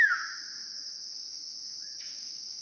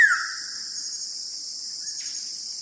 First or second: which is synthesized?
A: first